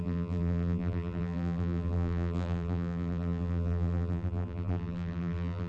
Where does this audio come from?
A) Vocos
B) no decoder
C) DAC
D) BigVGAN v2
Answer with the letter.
D